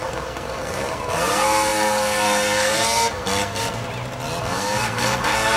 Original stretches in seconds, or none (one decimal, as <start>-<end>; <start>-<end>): 3.8-4.4